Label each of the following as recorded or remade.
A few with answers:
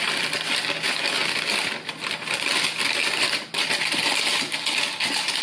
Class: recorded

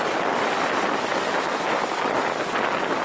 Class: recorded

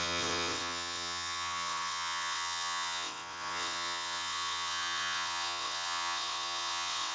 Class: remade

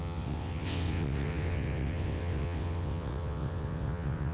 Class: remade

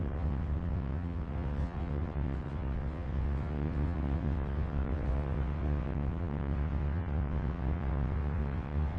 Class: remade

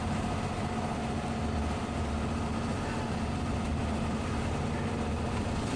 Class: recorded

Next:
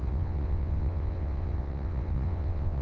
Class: remade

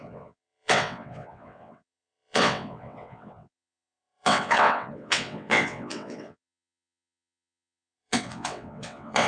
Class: remade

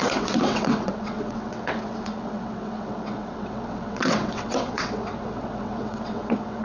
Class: remade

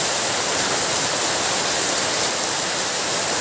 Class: recorded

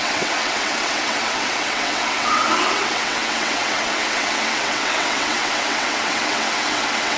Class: remade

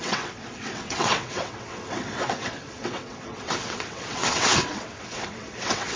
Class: remade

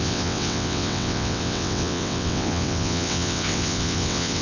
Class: remade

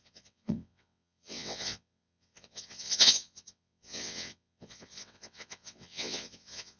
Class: remade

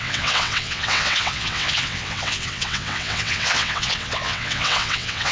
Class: remade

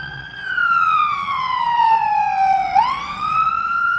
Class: remade